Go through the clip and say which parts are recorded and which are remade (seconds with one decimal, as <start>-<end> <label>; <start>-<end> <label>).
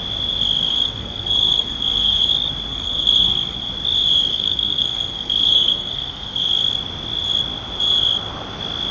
0.0-0.6 recorded; 0.6-2.2 remade; 2.2-2.7 recorded; 2.7-3.7 remade; 3.7-4.3 recorded; 4.3-6.7 remade; 6.7-8.9 recorded